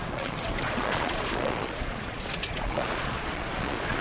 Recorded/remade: remade